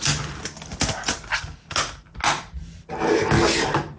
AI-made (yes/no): no